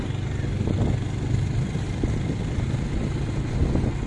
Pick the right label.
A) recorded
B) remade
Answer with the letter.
A